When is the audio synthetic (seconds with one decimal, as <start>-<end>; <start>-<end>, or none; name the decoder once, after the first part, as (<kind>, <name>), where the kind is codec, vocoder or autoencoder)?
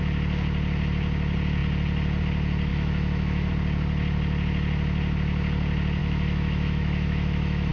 2.7-3.5 (autoencoder, DAC-VAE); 6.0-7.7